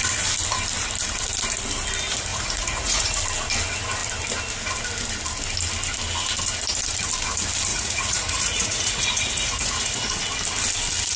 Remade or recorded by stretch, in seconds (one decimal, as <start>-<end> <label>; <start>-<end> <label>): 0.0-2.3 recorded; 2.3-3.2 remade; 3.2-7.7 recorded; 7.7-10.1 remade; 10.1-11.2 recorded